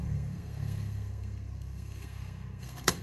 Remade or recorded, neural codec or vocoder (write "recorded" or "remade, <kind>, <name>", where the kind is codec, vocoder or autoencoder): remade, codec, SNAC